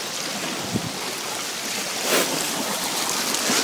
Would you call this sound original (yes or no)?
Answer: yes